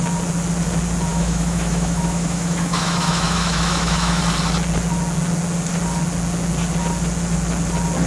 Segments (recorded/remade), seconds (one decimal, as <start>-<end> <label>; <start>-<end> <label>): 0.0-1.1 recorded; 1.1-4.2 remade; 4.2-8.1 recorded